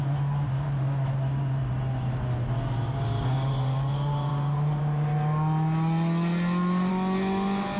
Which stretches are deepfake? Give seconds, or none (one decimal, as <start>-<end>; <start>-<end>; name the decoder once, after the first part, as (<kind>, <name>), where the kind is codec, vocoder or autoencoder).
none